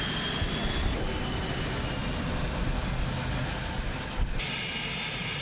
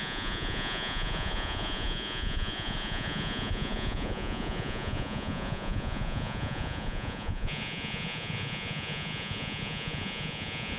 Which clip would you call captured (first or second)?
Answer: first